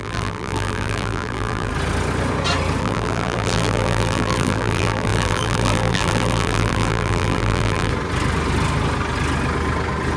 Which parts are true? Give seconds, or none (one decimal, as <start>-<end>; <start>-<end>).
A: 1.7-2.8; 7.9-10.2